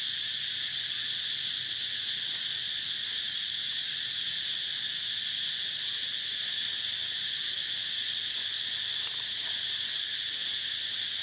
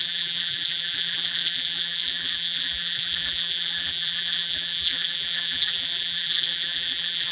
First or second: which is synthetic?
second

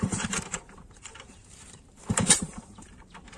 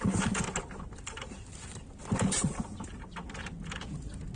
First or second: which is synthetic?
first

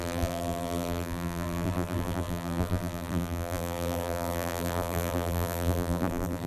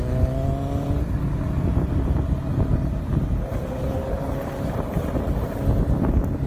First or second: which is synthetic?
first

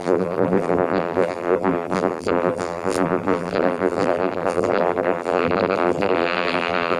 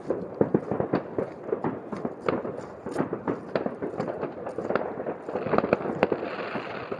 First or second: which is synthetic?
first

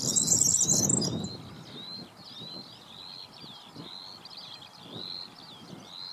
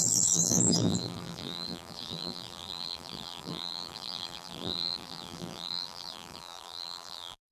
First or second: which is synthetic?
second